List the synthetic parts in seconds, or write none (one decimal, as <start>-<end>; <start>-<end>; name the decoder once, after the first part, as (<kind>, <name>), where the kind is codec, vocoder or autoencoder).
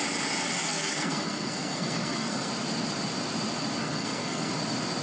0.6-2.5 (codec, SNAC); 3.8-4.5